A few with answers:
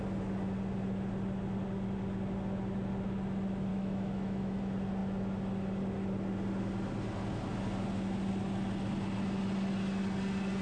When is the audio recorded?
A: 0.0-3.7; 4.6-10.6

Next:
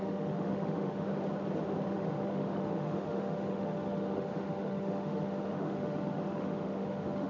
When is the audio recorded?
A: 1.1-1.9

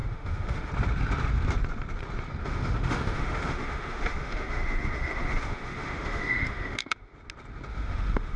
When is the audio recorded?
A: 0.7-2.4; 7.1-7.7